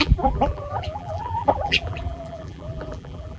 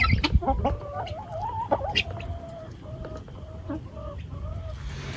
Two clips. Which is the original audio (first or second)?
second